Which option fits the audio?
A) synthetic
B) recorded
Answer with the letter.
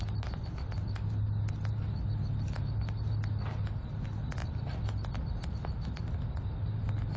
B